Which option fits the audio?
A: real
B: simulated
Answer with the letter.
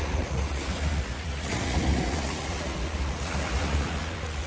B